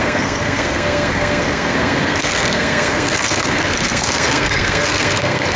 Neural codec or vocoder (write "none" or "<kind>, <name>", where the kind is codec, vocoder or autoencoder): codec, SNAC